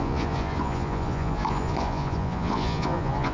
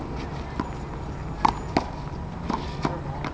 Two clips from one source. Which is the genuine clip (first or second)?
second